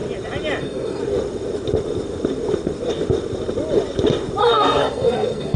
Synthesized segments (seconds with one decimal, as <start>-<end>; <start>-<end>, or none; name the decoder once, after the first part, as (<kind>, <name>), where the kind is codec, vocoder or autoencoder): 0.6-1.0 (codec, SNAC); 4.4-5.6